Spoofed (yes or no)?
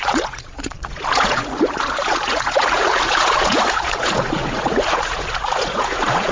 yes